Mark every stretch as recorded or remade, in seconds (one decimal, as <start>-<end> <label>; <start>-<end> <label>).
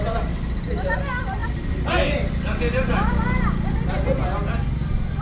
0.0-5.2 recorded